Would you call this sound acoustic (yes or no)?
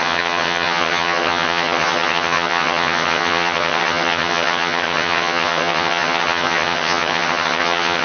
no